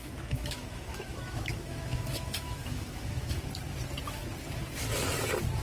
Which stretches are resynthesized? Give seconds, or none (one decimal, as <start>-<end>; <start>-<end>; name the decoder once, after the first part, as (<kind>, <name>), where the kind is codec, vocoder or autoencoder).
0.0-3.4 (autoencoder, DAC-VAE)